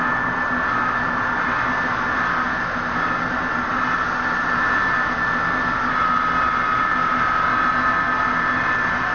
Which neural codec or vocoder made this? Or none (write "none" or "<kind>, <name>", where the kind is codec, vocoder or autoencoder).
none